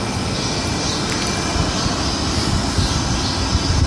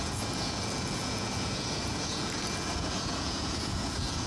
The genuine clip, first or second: first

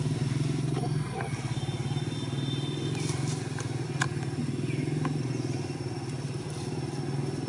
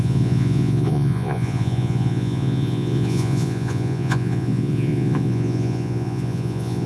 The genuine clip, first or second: first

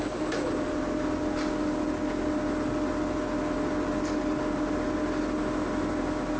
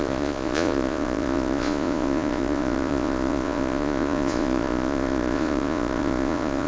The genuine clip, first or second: first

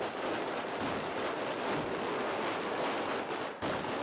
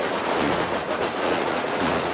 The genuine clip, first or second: first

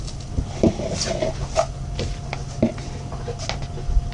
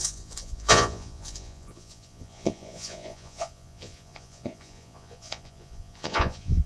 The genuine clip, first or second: first